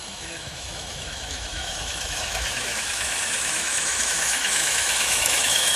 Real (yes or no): no